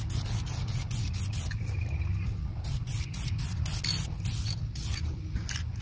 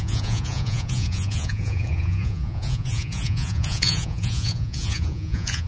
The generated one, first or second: second